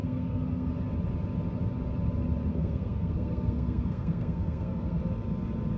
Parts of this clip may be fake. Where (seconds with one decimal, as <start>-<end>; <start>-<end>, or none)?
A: 0.0-0.7; 2.5-5.0